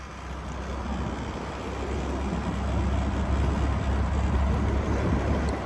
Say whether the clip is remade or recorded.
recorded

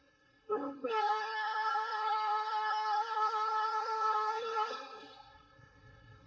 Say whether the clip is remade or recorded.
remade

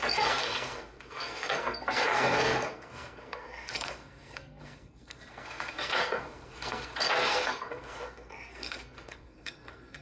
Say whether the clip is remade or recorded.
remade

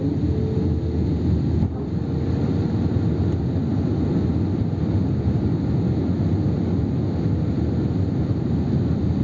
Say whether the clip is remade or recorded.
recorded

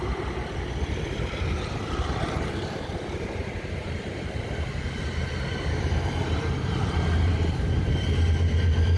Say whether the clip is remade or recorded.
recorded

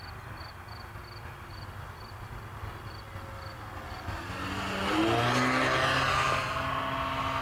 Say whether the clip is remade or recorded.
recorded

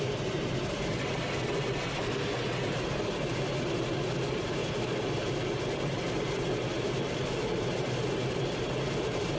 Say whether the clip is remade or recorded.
recorded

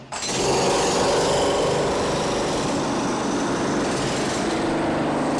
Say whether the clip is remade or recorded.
recorded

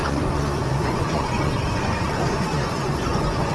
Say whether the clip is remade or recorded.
remade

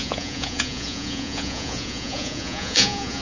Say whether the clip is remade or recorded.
remade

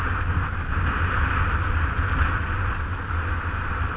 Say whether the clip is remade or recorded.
recorded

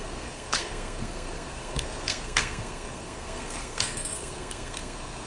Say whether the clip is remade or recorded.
remade